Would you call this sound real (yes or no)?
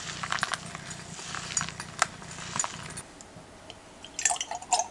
yes